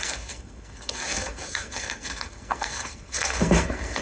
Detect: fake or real fake